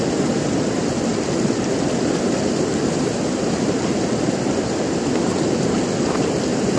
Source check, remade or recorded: recorded